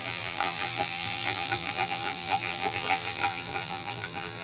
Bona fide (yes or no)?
no